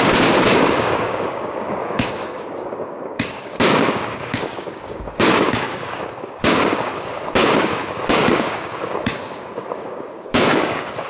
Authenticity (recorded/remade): remade